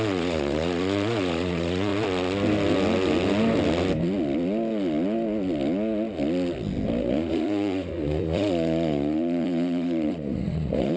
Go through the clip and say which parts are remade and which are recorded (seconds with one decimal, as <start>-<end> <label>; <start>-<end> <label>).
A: 0.0-1.9 remade; 1.9-7.0 recorded; 7.0-11.0 remade